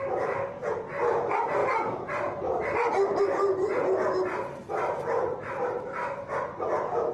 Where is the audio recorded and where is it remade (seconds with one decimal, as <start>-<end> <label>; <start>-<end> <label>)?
0.0-1.6 recorded; 1.6-3.2 remade; 3.2-7.1 recorded

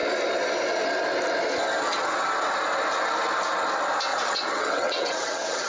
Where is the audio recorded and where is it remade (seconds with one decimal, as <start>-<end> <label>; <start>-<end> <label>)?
0.0-4.1 recorded; 4.1-5.7 remade

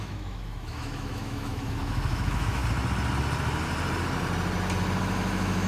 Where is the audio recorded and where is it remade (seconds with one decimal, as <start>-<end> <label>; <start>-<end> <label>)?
0.0-2.6 remade; 2.6-5.0 recorded; 5.0-5.7 remade

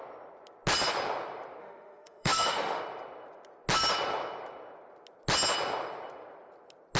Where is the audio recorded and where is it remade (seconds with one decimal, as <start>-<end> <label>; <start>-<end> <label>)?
0.0-1.6 recorded; 1.6-2.8 remade; 2.8-7.0 recorded

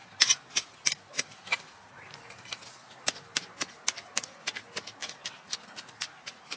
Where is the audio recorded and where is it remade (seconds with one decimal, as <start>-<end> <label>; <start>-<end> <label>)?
0.0-6.6 recorded

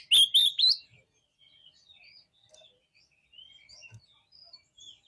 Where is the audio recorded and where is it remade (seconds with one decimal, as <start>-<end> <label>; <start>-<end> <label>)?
0.0-0.4 recorded; 0.4-1.0 remade; 1.0-5.1 recorded

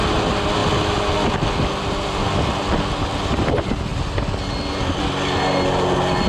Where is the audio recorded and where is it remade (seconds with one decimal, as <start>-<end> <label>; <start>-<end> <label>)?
0.0-6.3 recorded

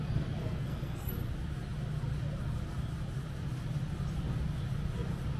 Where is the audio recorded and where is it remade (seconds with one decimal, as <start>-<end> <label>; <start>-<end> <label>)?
0.0-0.4 recorded; 0.4-1.1 remade; 1.1-5.4 recorded